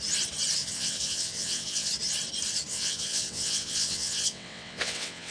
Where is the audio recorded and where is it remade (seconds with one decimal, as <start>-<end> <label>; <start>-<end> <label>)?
0.0-0.6 recorded; 0.6-1.9 remade; 1.9-2.7 recorded; 2.7-5.3 remade